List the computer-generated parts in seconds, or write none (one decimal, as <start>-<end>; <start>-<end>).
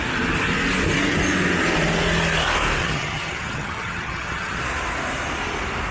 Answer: 2.8-4.6